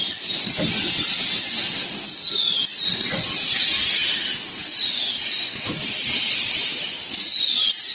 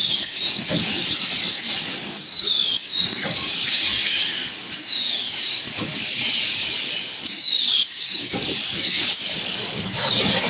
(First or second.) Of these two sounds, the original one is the first